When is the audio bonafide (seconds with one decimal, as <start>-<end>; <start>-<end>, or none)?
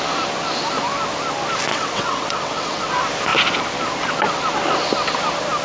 0.0-1.7; 2.9-5.6